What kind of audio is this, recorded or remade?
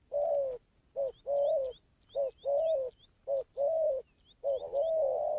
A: recorded